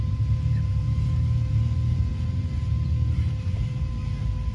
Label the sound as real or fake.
fake